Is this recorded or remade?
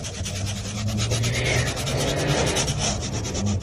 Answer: recorded